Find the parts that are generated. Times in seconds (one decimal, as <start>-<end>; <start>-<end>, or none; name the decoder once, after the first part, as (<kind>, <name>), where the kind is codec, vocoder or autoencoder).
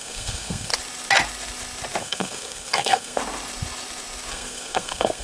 0.0-0.7 (codec, SNAC); 2.0-3.2; 4.3-5.2